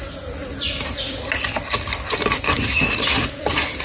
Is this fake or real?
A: real